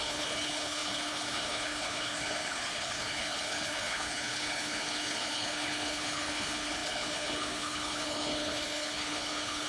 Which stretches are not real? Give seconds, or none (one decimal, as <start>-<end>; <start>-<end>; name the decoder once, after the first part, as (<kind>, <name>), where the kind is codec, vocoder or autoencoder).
0.0-9.7 (codec, HILCodec)